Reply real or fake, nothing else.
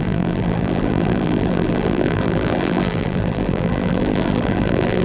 fake